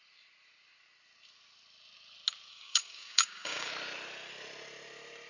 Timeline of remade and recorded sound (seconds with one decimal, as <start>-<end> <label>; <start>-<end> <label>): 0.0-2.5 recorded; 2.5-3.7 remade; 3.7-5.3 recorded